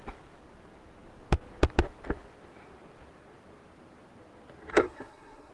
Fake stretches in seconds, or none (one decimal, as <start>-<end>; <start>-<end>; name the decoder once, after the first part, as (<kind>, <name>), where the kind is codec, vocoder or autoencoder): 4.7-5.5 (codec, SNAC)